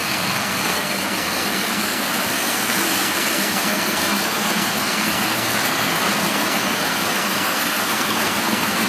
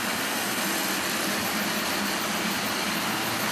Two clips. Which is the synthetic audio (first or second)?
first